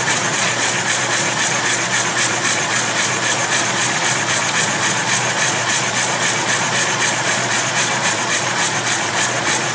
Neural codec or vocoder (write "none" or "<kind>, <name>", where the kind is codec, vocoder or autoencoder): vocoder, Vocos